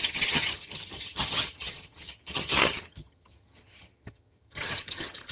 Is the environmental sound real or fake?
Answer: fake